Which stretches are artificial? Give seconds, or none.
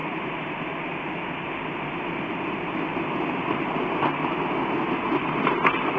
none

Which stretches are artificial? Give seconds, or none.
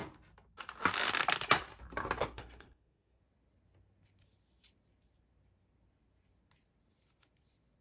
2.2-3.2 (codec, SNAC)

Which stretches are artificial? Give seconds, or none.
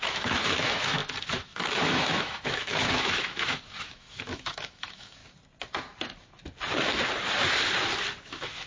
0.0-5.2 (autoencoder, DAC-VAE); 8.2-8.7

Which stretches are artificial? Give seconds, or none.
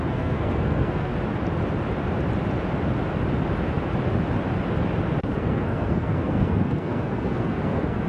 0.0-1.1 (codec, SNAC); 5.2-8.1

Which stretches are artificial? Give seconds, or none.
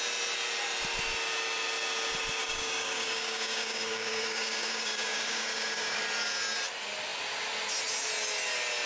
2.4-6.0 (codec, DAC)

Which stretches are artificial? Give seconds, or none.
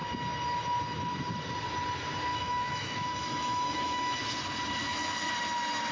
2.3-4.2 (autoencoder, DAC-VAE); 4.8-5.3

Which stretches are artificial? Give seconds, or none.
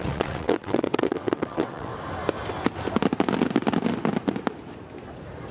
0.0-1.9 (vocoder, WaveNeXt)